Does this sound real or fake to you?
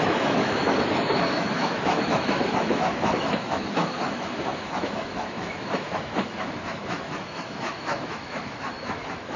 fake